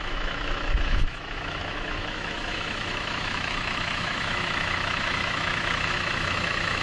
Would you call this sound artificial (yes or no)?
yes